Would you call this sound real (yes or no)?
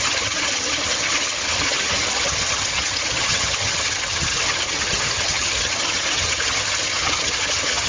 no